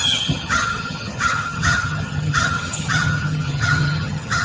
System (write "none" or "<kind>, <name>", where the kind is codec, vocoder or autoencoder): vocoder, HiFi-GAN